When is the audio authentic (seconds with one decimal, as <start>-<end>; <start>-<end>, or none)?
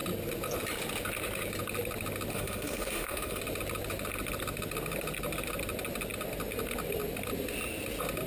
0.0-2.3; 3.4-8.3